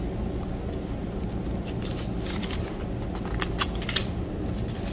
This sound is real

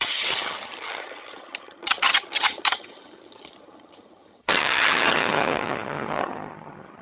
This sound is fake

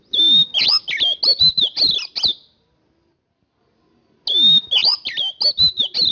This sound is real